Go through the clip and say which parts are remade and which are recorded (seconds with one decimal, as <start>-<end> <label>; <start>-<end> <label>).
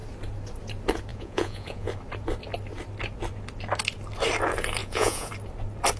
0.0-1.1 recorded; 1.1-1.9 remade; 1.9-4.8 recorded; 4.8-5.3 remade; 5.3-6.0 recorded